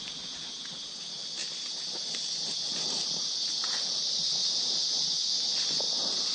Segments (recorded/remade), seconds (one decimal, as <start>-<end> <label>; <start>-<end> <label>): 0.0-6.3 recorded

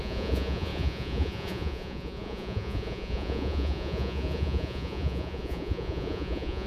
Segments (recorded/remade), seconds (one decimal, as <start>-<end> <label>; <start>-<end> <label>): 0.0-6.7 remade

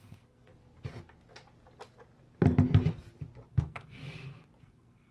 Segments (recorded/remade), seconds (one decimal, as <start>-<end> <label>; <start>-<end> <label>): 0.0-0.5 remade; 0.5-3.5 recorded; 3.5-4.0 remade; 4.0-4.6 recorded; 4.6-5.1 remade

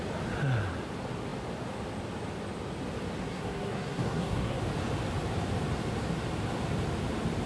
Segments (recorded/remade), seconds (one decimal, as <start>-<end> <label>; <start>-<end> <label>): 0.0-3.2 recorded; 3.2-4.6 remade; 4.6-7.5 recorded

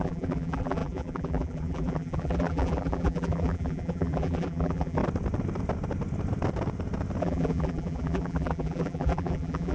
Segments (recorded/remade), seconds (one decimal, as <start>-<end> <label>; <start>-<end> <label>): 0.0-5.0 remade; 5.0-7.2 recorded; 7.2-9.7 remade